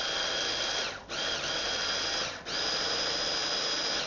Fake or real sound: real